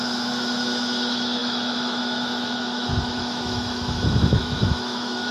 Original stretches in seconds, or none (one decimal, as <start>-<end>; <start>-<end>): none